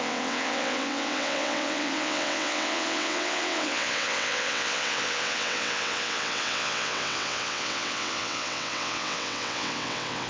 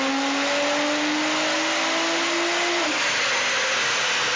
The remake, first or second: first